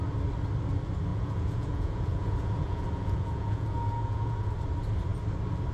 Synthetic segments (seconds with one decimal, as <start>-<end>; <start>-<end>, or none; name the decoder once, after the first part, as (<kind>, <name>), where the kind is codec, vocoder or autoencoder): 1.1-4.5 (vocoder, Vocos)

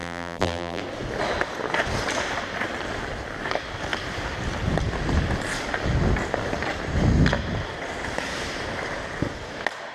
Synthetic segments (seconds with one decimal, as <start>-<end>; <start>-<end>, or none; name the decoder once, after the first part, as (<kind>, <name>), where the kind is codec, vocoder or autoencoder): 0.0-0.8 (vocoder, BigVGAN v2)